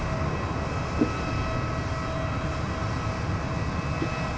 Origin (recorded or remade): recorded